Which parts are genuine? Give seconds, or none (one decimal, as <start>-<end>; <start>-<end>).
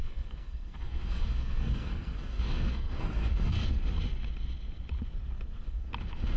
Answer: 3.8-6.4